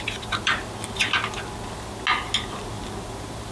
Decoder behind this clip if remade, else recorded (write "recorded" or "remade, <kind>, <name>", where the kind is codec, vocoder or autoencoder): recorded